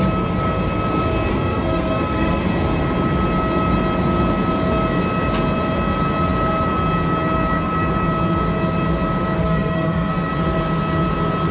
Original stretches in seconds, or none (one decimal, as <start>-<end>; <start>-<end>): 0.0-1.3; 2.4-9.4; 10.3-11.5